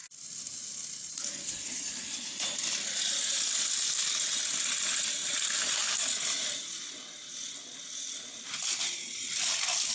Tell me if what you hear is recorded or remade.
recorded